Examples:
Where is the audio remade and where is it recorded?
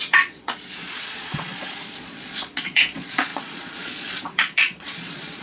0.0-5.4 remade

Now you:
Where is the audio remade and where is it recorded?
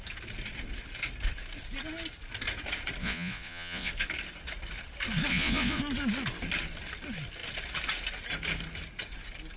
0.0-3.0 recorded; 3.0-3.9 remade; 3.9-5.3 recorded; 5.3-5.8 remade; 5.8-9.6 recorded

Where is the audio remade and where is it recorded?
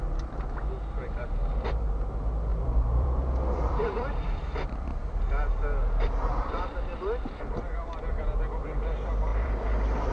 0.0-2.5 recorded; 2.5-7.4 remade; 7.4-9.3 recorded; 9.3-10.1 remade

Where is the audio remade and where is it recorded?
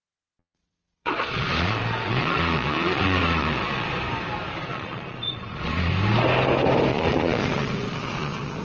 0.0-3.9 remade; 3.9-4.7 recorded; 4.7-5.9 remade; 5.9-6.9 recorded; 6.9-8.6 remade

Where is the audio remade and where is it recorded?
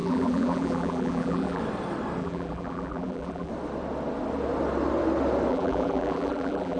0.0-1.6 remade; 1.6-2.2 recorded; 2.2-3.5 remade; 3.5-5.5 recorded; 5.5-6.8 remade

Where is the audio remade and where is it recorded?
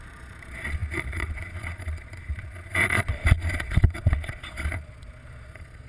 0.0-5.9 remade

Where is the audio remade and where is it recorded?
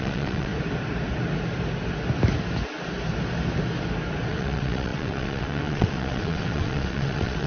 0.0-0.5 remade; 0.5-4.3 recorded; 4.3-7.5 remade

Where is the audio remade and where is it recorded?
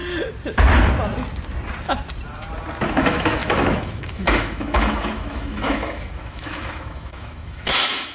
0.0-2.9 recorded; 2.9-8.1 remade